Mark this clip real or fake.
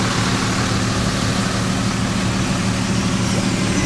real